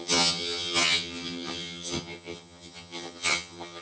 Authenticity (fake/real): fake